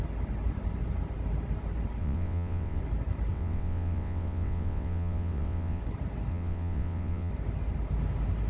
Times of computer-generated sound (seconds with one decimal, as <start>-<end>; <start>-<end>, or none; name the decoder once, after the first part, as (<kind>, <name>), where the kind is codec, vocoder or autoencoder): 2.0-2.8 (vocoder, WaveNeXt); 3.3-5.8; 6.3-7.3